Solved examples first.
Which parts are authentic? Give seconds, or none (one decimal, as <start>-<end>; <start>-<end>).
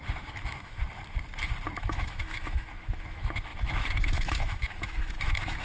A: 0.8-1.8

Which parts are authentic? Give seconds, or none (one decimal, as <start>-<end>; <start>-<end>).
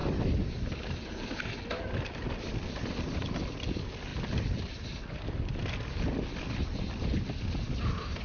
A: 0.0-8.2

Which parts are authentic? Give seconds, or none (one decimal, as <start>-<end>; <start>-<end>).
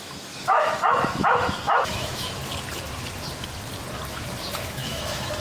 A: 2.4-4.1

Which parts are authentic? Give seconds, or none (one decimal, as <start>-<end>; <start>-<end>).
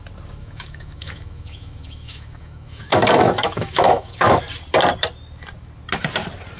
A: 0.0-0.4; 4.4-6.6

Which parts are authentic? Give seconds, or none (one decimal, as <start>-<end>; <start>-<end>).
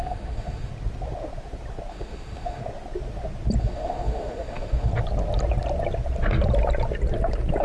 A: 0.7-1.9; 2.6-3.6; 4.9-7.6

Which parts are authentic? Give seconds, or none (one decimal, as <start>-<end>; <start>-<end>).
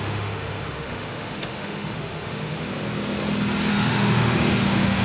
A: 2.7-3.7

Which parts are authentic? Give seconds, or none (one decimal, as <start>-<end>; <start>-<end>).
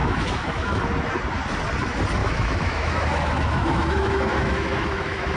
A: 0.8-2.2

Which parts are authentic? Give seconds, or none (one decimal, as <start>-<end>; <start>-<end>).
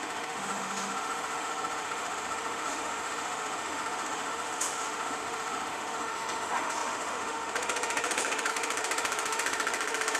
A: none